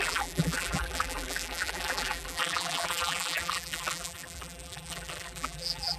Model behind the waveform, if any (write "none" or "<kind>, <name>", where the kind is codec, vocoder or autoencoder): vocoder, BigVGAN v2